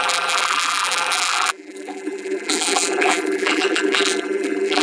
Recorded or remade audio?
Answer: remade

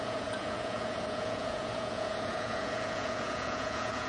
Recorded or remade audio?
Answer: remade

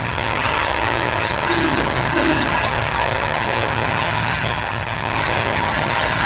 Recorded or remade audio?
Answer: remade